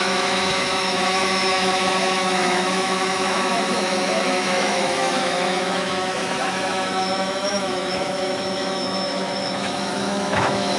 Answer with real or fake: fake